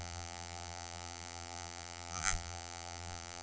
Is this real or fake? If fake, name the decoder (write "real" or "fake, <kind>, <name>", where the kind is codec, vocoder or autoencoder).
fake, vocoder, BigVGAN v2